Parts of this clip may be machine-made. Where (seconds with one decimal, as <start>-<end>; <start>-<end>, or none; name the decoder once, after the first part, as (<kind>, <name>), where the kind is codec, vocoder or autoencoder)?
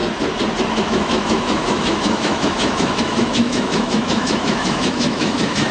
0.8-5.7 (autoencoder, DAC-VAE)